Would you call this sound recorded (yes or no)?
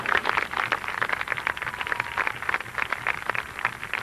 yes